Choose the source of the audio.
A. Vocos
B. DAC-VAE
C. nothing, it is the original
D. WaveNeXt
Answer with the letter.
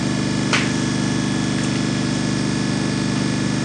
C